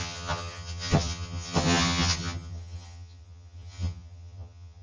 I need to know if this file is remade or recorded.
remade